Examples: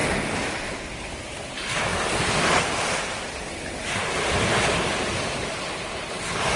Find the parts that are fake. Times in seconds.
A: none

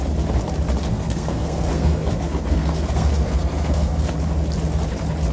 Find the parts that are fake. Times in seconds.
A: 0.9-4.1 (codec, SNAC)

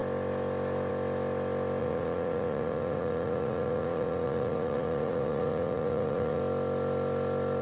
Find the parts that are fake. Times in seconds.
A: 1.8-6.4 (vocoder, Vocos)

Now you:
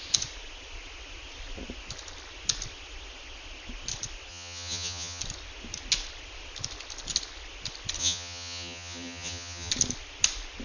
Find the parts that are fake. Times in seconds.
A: 4.3-5.2 (vocoder, HiFi-GAN); 8.0-9.7